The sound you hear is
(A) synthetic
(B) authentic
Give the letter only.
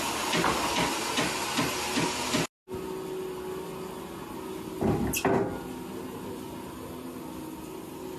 B